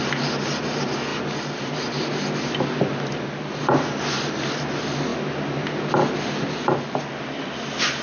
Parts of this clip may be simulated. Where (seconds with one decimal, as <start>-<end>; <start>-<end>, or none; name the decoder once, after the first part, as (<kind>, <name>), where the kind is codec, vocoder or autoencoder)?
none